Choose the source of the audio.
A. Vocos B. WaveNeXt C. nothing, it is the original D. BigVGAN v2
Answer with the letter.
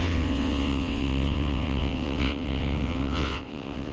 B